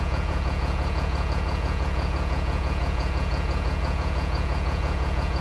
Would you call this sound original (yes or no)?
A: no